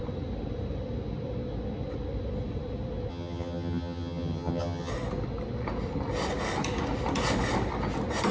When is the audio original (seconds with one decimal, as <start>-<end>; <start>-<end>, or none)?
0.0-3.1; 4.9-8.3

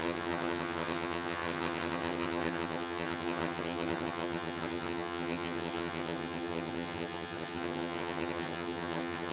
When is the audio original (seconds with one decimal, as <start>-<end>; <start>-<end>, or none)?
none

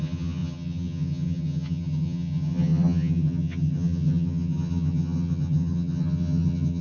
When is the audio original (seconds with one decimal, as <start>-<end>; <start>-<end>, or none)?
none

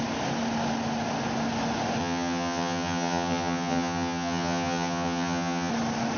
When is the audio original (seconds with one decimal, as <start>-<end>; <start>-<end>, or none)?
0.0-2.0; 5.7-6.2

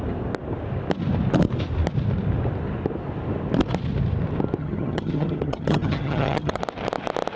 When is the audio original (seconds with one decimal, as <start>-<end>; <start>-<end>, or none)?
0.0-4.6; 6.6-7.4

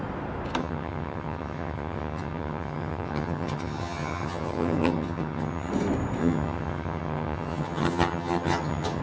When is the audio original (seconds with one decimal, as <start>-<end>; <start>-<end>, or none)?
0.0-0.6; 5.7-6.2